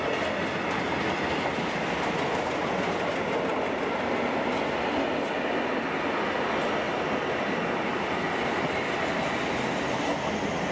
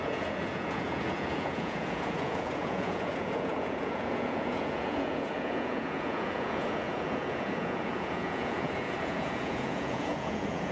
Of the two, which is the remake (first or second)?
second